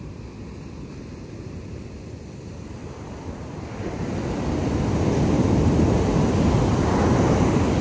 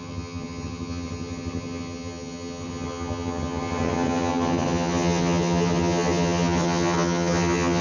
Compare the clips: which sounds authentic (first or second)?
first